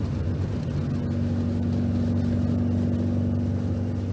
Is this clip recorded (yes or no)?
yes